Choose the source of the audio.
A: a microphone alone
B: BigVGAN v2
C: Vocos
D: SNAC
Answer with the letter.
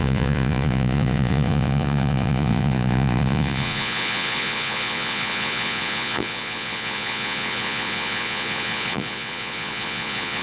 C